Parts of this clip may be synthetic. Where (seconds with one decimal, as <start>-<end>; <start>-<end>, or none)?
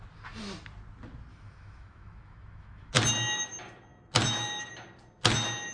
1.3-2.9